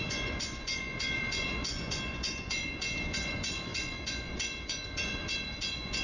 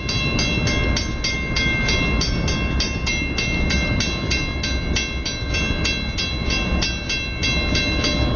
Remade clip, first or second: first